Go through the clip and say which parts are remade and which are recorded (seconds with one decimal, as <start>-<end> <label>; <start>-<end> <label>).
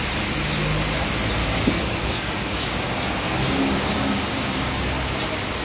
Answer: 0.0-1.4 recorded; 1.4-4.8 remade; 4.8-5.6 recorded